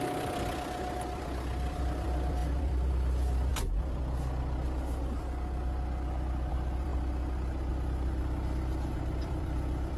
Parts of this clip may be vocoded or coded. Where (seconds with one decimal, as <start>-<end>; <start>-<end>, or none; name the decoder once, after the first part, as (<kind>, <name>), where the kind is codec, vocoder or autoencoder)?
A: 0.0-3.5 (vocoder, BigVGAN v2); 6.5-6.9; 7.7-10.0